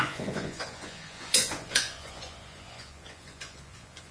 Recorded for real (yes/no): no